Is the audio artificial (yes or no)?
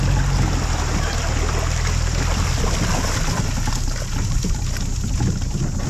no